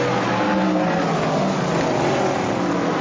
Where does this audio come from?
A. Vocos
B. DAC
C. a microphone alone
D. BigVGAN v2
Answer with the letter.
C